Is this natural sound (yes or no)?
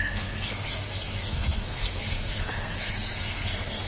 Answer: no